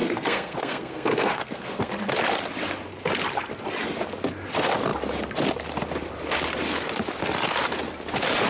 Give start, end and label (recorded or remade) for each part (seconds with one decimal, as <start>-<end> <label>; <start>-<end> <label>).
0.0-1.9 remade; 1.9-8.5 recorded